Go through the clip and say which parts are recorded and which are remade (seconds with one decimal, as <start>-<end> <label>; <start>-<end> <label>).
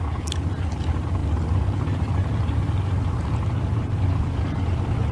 0.0-5.1 recorded